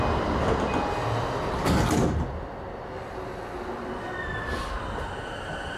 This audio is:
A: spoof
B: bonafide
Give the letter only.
B